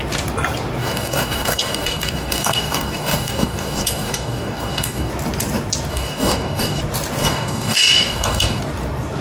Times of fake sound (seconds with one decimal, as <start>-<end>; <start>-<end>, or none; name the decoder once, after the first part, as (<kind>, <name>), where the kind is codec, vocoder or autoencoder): 0.8-5.1 (codec, DAC); 5.9-6.8; 7.2-8.6